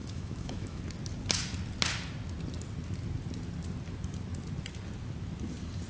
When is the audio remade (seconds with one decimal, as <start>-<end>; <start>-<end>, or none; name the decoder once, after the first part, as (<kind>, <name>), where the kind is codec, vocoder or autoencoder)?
0.0-0.8 (autoencoder, DAC-VAE)